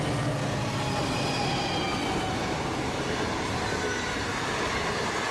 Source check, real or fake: real